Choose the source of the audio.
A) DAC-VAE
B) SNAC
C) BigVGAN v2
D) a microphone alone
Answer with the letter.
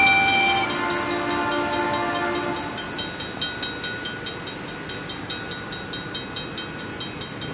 D